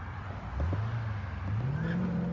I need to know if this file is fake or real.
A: real